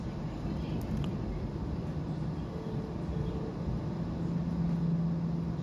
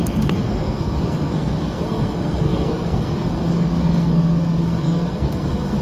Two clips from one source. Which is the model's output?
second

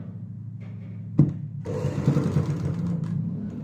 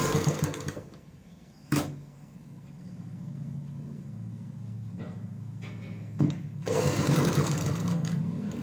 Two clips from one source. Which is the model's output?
second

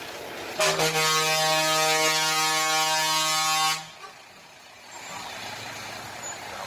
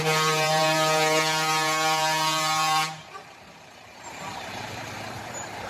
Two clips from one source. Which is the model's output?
second